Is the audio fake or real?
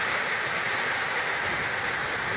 real